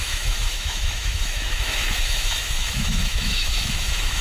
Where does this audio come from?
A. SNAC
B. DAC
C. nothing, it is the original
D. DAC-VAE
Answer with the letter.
D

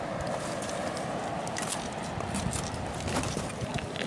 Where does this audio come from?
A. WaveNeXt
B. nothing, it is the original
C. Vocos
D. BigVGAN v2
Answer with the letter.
B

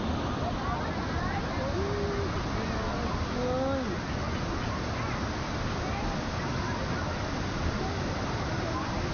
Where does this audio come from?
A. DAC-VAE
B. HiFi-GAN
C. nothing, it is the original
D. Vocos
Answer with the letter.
C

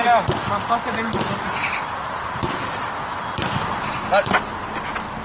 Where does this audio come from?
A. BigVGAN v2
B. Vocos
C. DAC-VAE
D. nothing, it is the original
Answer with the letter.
D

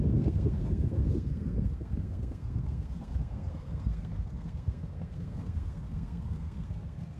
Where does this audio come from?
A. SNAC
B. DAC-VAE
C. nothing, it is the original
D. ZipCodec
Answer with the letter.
A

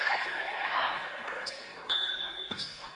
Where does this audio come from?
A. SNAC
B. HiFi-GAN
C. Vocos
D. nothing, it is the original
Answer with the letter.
A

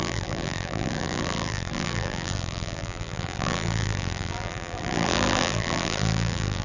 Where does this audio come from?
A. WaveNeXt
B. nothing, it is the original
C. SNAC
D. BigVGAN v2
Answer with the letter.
D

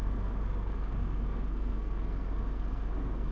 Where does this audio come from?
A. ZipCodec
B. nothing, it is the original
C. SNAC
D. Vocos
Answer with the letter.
C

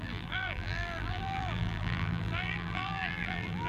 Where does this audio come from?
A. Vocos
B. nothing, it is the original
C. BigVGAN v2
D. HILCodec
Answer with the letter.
C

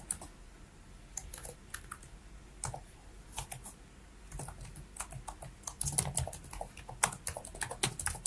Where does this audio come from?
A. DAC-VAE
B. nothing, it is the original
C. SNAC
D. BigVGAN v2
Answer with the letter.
B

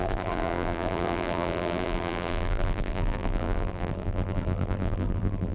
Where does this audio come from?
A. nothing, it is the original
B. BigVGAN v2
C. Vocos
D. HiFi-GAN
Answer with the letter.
B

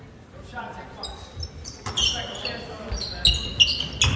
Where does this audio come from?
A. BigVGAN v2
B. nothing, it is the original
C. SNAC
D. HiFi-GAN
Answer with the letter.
B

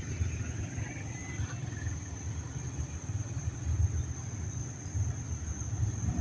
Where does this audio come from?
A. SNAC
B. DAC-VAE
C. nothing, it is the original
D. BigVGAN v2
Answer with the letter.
C